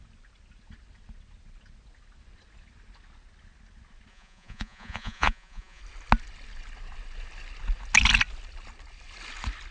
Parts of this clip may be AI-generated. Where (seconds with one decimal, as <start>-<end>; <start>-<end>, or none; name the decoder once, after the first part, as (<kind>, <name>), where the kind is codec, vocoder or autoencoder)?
4.1-5.8 (vocoder, Vocos)